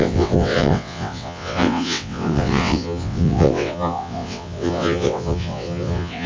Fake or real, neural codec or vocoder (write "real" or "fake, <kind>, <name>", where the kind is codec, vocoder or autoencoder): fake, vocoder, WaveNeXt